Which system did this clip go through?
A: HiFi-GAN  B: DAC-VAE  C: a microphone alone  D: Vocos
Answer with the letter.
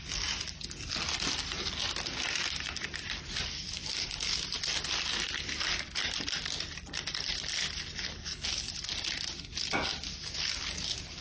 C